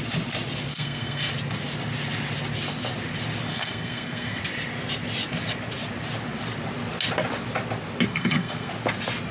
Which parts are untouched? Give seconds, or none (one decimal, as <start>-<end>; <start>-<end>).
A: 0.0-0.7; 1.3-3.5; 4.4-8.1; 8.7-9.3